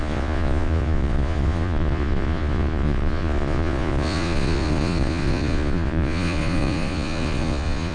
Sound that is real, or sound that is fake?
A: fake